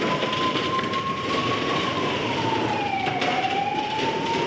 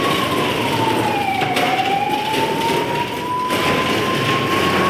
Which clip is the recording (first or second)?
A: second